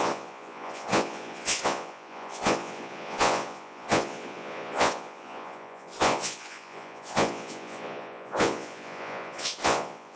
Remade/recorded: remade